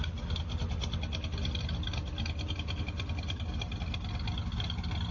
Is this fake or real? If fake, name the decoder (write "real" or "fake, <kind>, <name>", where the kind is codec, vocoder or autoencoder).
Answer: real